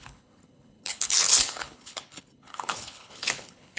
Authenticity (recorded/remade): remade